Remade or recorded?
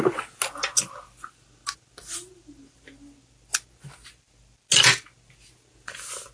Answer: recorded